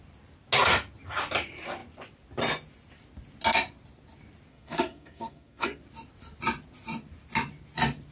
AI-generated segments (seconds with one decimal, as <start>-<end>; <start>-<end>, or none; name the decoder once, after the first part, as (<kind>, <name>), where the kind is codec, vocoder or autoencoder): 4.5-5.8 (codec, SNAC)